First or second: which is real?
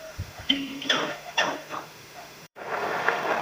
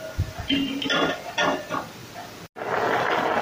second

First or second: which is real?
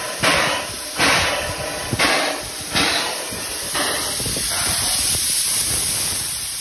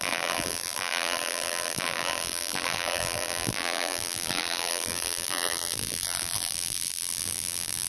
first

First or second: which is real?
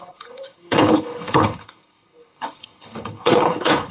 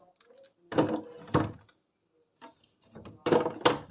second